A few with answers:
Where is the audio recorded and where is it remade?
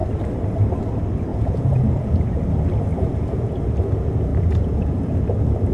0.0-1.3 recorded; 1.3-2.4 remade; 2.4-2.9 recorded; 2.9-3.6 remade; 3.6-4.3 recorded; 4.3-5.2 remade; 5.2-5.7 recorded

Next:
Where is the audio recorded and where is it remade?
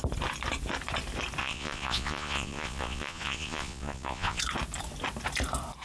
0.0-1.4 recorded; 1.4-4.4 remade; 4.4-5.8 recorded